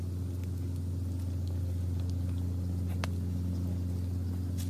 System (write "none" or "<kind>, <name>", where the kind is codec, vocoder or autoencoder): none